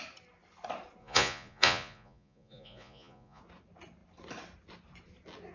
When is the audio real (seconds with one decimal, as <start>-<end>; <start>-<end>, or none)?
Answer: 0.0-1.0; 3.4-5.5